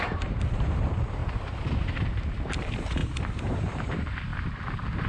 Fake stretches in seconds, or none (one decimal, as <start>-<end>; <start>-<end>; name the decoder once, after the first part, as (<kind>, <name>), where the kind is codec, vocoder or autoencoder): 0.0-3.0 (vocoder, BigVGAN v2); 3.5-4.3